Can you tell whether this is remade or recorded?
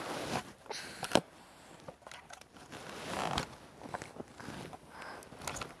recorded